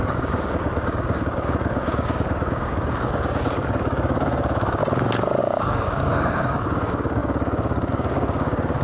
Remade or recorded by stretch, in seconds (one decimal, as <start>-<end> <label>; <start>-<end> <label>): 0.0-4.8 remade; 4.8-5.4 recorded; 5.4-8.8 remade